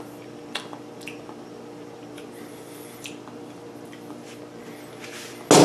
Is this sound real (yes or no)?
yes